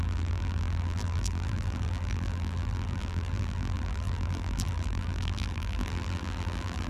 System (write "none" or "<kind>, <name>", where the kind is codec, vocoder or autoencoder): vocoder, BigVGAN v2